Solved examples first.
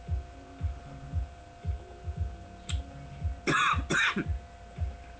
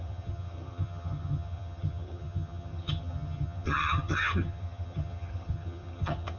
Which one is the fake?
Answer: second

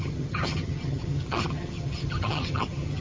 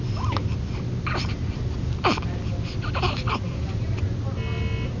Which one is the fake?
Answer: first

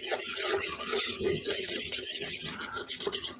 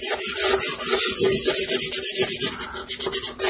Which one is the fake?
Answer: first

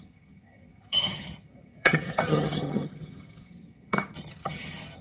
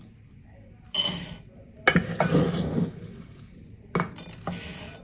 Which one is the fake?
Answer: first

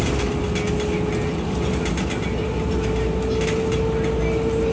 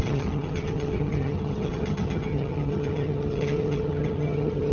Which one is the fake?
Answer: second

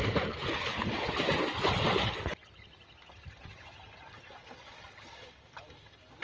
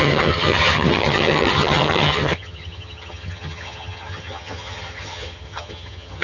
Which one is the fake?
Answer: second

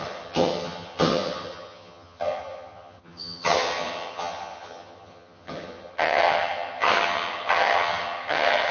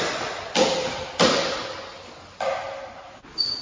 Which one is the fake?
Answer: first